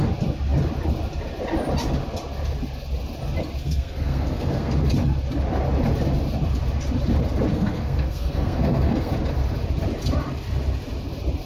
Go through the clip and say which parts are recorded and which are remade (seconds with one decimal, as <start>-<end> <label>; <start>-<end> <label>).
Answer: 0.0-3.6 recorded; 3.6-4.8 remade; 4.8-7.5 recorded; 7.5-9.1 remade; 9.1-11.5 recorded